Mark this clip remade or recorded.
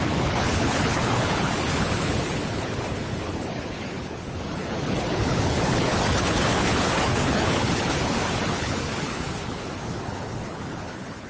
remade